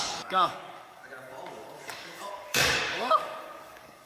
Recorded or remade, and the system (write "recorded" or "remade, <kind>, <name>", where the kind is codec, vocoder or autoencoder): remade, codec, DAC